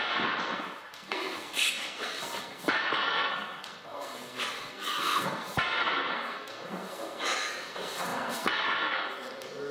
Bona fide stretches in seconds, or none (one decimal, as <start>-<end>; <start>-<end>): none